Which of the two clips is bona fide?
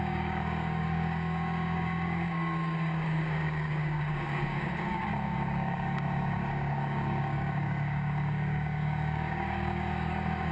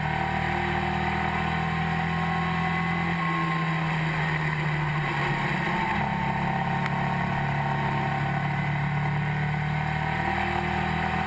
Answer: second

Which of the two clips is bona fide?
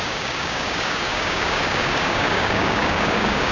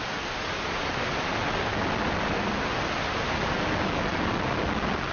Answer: second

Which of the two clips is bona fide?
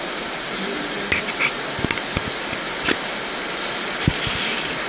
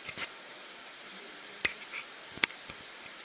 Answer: first